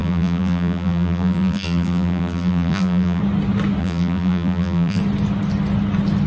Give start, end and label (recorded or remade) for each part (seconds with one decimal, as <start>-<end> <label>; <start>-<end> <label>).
0.0-3.2 remade; 3.2-3.8 recorded; 3.8-5.0 remade; 5.0-6.3 recorded